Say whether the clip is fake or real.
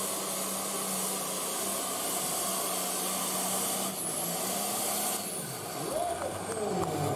real